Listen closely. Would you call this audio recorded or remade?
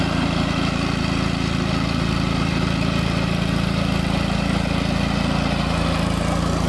recorded